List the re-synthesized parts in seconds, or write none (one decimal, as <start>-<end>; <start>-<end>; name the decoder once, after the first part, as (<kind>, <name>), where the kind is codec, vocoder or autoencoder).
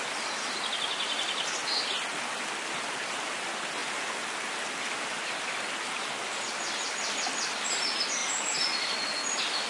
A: none